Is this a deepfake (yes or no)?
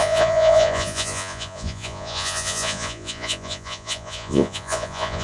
yes